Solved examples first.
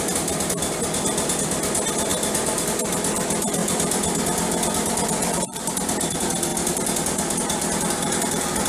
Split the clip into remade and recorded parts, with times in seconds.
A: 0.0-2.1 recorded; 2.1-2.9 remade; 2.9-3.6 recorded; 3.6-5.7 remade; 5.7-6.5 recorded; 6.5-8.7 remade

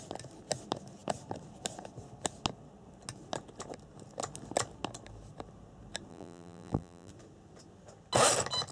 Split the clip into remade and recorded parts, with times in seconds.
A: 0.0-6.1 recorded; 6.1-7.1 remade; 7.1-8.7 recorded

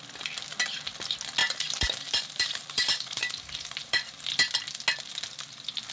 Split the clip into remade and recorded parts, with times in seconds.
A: 0.0-1.4 recorded; 1.4-4.3 remade; 4.3-5.9 recorded

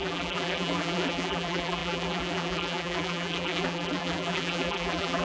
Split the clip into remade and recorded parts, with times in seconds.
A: 0.0-5.2 remade

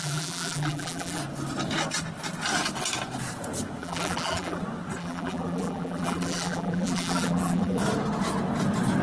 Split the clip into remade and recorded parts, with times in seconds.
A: 0.0-1.2 remade; 1.2-3.8 recorded; 3.8-4.6 remade; 4.6-5.0 recorded; 5.0-7.8 remade; 7.8-9.0 recorded

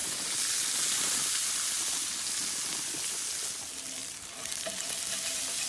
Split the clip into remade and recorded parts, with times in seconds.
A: 0.0-4.0 recorded; 4.0-4.9 remade; 4.9-5.7 recorded